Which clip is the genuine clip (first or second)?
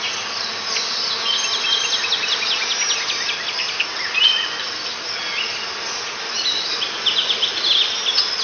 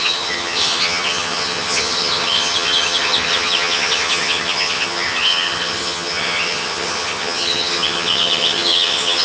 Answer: first